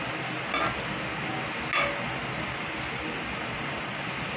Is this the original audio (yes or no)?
yes